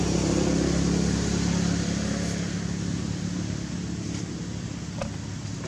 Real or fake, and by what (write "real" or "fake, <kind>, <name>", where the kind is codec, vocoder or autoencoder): real